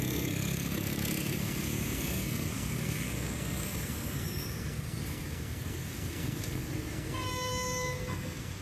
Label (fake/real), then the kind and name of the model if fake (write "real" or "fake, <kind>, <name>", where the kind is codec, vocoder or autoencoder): fake, codec, SNAC